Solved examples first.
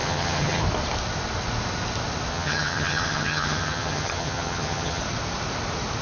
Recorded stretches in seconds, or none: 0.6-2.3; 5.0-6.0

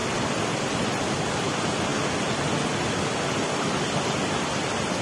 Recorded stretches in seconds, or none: 0.0-5.0

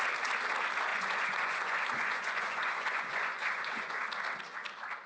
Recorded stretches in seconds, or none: 0.0-0.9; 4.0-5.1

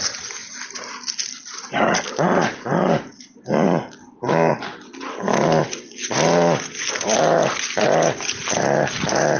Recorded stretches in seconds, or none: 0.0-9.4